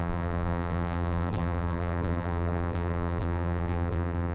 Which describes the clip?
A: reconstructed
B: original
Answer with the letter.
A